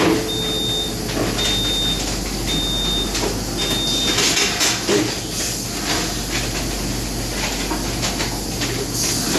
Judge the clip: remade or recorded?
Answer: recorded